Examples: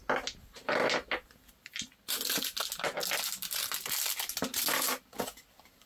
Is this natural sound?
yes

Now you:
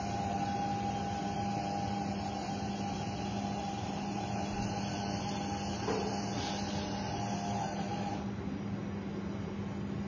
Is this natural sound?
yes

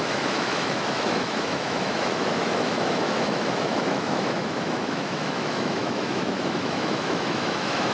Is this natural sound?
no